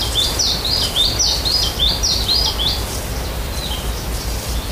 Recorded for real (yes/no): no